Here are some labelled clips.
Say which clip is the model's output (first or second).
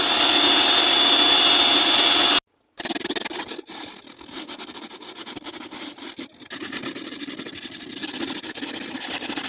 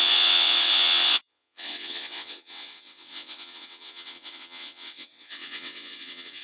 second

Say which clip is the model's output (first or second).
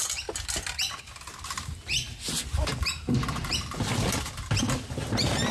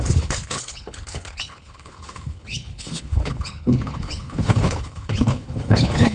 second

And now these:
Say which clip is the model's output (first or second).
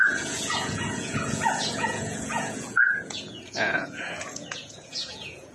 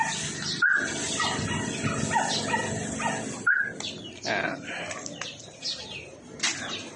first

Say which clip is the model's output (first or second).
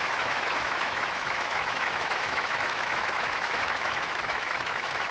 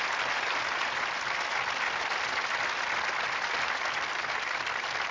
first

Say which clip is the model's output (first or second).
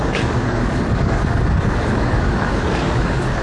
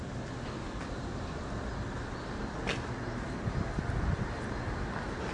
first